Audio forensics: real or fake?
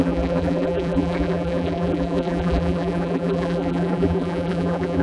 fake